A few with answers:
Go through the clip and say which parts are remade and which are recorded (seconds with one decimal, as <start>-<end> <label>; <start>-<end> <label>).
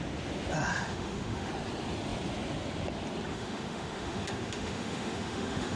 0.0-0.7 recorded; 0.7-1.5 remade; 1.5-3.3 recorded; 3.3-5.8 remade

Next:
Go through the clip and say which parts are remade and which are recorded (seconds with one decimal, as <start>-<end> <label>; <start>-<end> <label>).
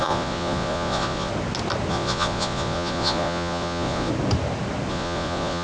0.0-1.3 remade; 1.3-1.9 recorded; 1.9-4.1 remade; 4.1-4.9 recorded; 4.9-5.6 remade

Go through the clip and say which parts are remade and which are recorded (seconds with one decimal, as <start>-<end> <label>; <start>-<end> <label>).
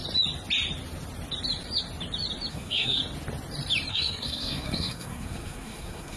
0.0-2.5 recorded; 2.5-3.0 remade; 3.0-3.9 recorded; 3.9-6.2 remade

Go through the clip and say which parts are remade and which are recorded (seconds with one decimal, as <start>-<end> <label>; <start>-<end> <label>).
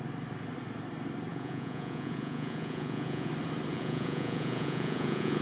0.0-1.3 recorded; 1.3-3.3 remade; 3.3-3.7 recorded; 3.7-5.4 remade